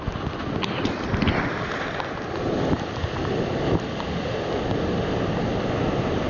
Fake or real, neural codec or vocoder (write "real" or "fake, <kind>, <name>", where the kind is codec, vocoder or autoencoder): real